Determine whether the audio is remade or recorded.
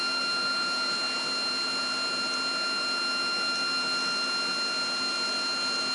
recorded